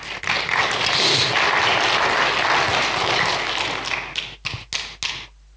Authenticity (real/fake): real